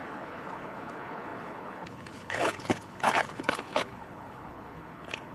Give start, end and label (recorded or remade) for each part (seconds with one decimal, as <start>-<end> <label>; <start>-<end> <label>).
0.0-5.3 remade